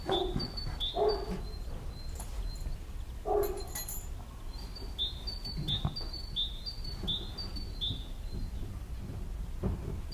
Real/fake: real